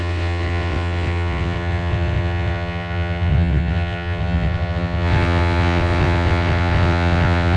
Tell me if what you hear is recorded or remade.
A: remade